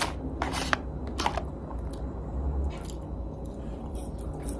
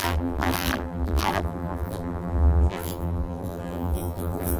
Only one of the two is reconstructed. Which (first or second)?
second